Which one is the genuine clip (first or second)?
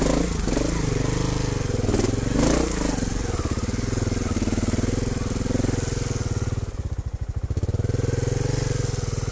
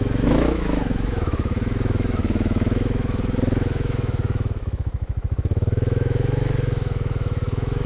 first